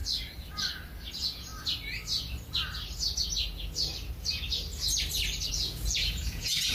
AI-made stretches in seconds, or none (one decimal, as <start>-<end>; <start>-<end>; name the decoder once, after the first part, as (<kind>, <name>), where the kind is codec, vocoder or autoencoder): 1.1-1.5 (vocoder, Vocos); 5.5-6.7